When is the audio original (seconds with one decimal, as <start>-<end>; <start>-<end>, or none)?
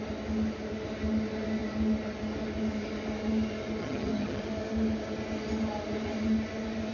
0.0-3.8; 4.4-6.9